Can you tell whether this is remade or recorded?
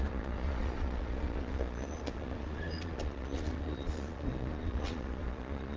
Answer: remade